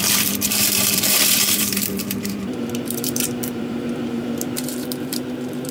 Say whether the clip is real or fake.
fake